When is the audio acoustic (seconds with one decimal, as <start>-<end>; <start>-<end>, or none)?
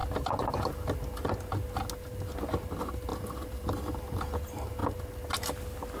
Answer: 0.0-3.1; 4.2-6.0